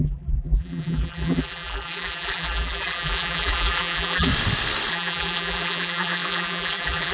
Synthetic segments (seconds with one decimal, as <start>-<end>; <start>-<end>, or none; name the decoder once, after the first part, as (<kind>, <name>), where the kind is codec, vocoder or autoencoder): 0.0-4.3 (vocoder, BigVGAN v2); 4.9-7.1